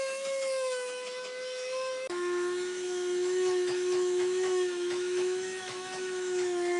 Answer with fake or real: fake